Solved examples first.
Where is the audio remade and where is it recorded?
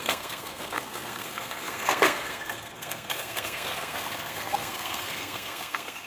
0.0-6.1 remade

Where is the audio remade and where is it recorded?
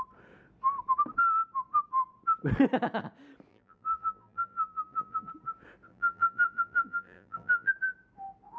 0.0-3.5 recorded; 3.5-5.3 remade; 5.3-5.9 recorded; 5.9-7.7 remade; 7.7-8.6 recorded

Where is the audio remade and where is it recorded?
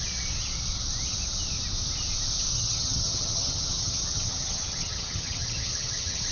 0.0-2.5 recorded; 2.5-6.3 remade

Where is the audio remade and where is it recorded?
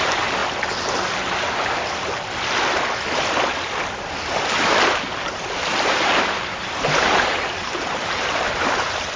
0.0-0.4 remade; 0.4-5.7 recorded; 5.7-9.2 remade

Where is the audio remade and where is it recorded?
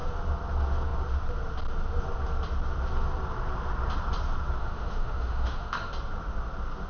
0.0-4.6 recorded; 4.6-5.9 remade; 5.9-6.9 recorded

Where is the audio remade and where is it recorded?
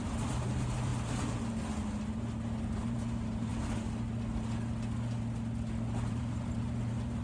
0.0-0.9 remade; 0.9-2.6 recorded; 2.6-3.5 remade; 3.5-6.1 recorded; 6.1-7.2 remade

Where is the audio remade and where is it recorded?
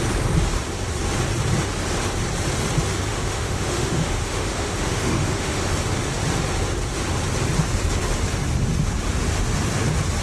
0.0-3.1 recorded; 3.1-5.7 remade; 5.7-10.2 recorded